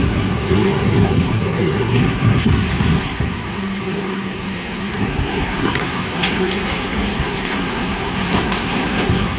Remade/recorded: remade